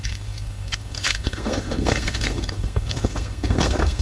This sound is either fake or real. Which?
fake